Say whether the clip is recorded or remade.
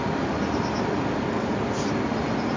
recorded